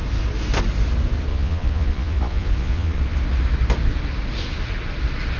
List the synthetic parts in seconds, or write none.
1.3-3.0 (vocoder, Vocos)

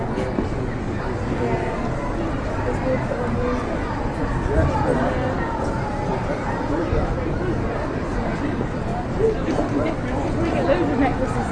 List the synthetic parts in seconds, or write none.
none

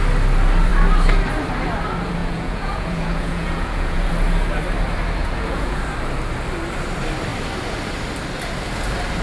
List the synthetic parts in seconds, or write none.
2.2-4.1 (vocoder, Vocos); 5.2-5.8